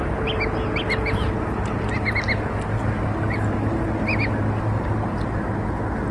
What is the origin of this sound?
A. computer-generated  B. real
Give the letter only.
B